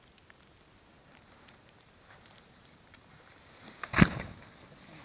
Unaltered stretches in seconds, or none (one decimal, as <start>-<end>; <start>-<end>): 0.0-1.0; 3.9-5.0